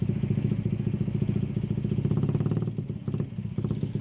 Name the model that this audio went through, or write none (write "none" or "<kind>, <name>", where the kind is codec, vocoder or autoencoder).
none